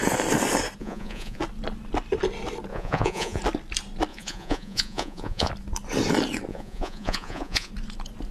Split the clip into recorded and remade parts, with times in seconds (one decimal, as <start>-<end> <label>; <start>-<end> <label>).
0.0-0.8 recorded; 0.8-1.4 remade; 1.4-2.7 recorded; 2.7-3.4 remade; 3.4-4.1 recorded; 4.1-5.5 remade; 5.5-6.5 recorded; 6.5-7.7 remade; 7.7-8.3 recorded